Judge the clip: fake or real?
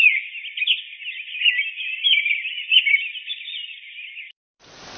real